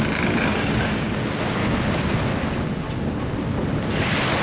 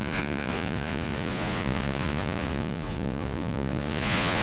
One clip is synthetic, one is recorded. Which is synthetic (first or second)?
second